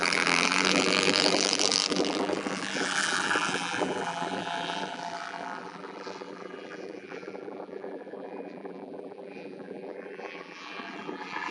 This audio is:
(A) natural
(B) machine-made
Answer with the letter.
B